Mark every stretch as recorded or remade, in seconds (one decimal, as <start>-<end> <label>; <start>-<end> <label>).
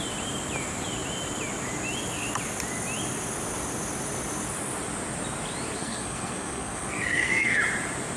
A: 0.0-5.8 recorded; 5.8-7.6 remade; 7.6-8.2 recorded